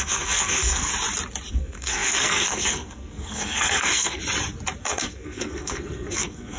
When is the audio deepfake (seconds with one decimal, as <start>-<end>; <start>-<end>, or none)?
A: 0.0-0.9; 1.5-4.2; 4.8-6.6